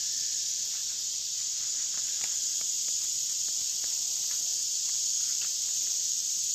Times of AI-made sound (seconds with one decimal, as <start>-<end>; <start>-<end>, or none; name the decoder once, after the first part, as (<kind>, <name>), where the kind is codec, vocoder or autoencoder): none